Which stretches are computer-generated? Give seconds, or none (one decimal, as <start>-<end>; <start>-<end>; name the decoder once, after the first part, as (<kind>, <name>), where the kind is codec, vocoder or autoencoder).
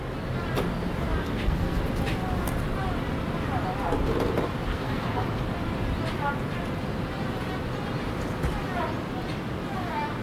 1.2-1.8 (codec, SNAC); 4.7-5.4